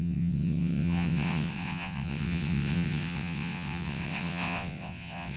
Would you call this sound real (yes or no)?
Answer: no